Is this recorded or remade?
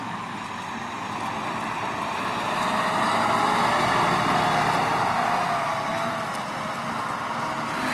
recorded